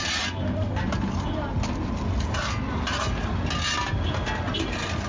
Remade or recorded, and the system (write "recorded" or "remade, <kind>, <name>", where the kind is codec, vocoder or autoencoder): recorded